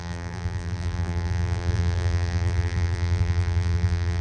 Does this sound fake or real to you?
fake